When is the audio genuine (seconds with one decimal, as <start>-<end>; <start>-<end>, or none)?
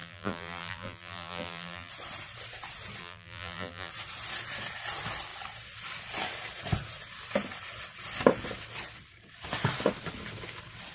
1.9-3.0; 3.9-10.9